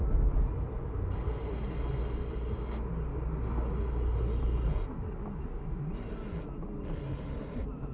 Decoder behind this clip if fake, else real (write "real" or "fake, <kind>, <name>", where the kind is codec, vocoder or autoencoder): real